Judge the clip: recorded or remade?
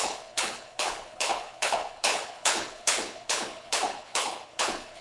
remade